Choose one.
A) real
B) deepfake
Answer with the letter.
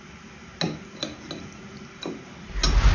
A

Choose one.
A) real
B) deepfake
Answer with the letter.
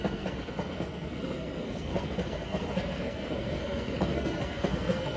B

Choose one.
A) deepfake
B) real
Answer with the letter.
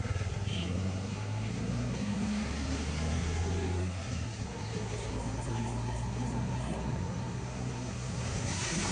A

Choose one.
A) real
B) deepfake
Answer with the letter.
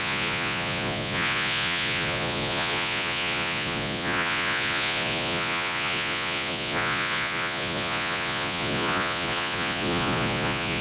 B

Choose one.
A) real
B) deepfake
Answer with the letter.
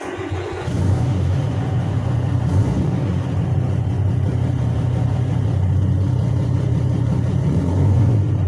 B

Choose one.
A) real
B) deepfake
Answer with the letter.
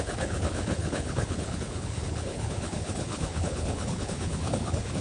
B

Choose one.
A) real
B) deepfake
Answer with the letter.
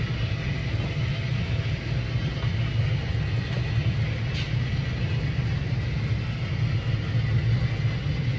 A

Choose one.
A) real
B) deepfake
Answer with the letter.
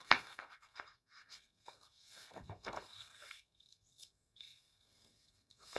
B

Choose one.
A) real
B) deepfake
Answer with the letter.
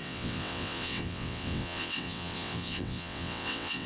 B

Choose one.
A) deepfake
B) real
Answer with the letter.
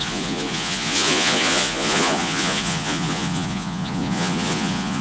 A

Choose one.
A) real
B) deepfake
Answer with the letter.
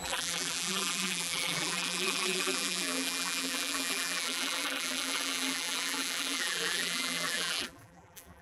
B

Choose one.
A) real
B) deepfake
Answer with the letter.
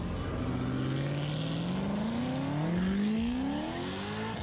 A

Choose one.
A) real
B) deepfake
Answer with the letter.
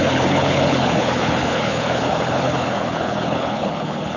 B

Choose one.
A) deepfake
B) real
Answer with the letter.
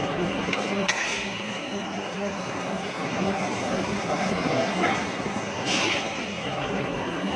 A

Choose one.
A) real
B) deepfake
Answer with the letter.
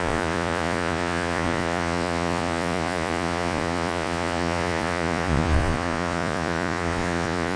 B